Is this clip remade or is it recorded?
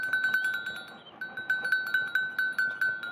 recorded